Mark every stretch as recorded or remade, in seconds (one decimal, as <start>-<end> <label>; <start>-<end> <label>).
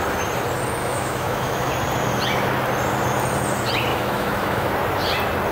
0.0-0.8 recorded; 0.8-1.7 remade; 1.7-3.9 recorded; 3.9-4.7 remade; 4.7-5.5 recorded